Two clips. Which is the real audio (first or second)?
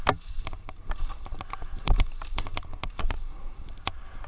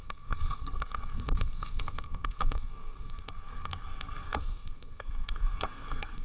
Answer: first